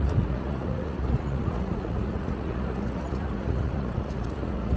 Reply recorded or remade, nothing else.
remade